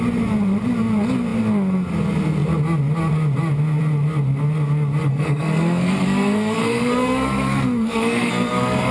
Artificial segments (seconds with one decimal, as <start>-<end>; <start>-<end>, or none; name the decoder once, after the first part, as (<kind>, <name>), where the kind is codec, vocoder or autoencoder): 5.1-8.9 (codec, SNAC)